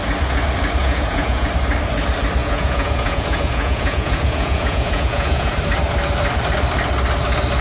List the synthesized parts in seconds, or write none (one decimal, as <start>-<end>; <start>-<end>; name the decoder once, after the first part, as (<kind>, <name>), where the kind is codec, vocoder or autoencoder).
0.8-1.5 (vocoder, Vocos); 2.4-5.6